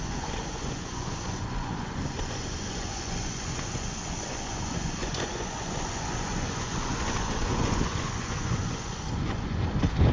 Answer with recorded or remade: remade